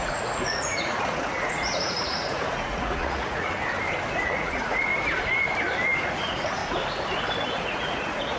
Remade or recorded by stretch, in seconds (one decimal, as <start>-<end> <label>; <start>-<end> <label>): 0.0-3.5 remade; 3.5-4.2 recorded; 4.2-4.9 remade; 4.9-6.0 recorded; 6.0-6.6 remade; 6.6-7.5 recorded; 7.5-8.4 remade